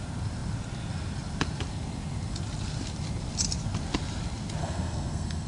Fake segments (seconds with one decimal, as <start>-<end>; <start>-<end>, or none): 4.6-5.5